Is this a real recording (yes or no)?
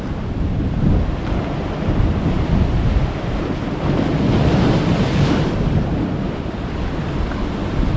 yes